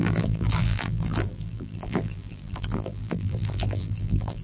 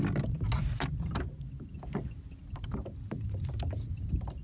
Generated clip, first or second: first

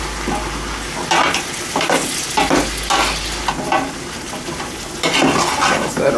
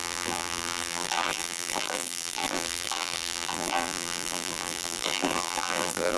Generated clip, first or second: second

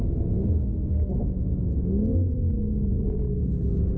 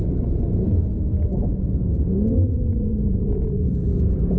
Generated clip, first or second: second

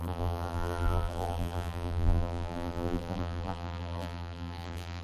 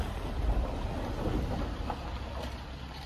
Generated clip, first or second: first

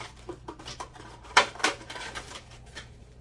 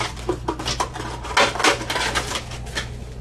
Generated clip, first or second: first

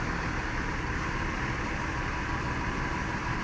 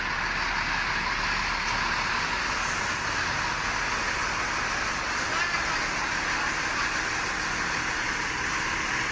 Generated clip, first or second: first